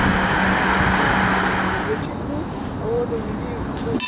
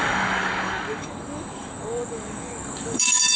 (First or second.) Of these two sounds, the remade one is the second